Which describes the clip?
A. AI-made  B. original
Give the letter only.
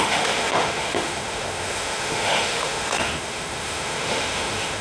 A